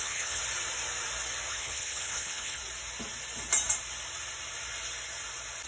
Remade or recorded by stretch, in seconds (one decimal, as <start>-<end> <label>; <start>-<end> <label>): 0.0-0.4 remade; 0.4-1.5 recorded; 1.5-2.6 remade; 2.6-5.7 recorded